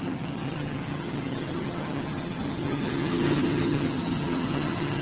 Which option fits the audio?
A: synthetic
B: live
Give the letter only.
A